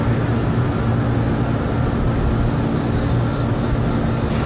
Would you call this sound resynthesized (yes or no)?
no